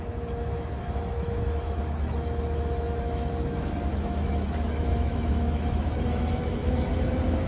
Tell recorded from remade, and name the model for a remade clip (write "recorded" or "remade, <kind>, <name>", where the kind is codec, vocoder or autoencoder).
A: remade, autoencoder, DAC-VAE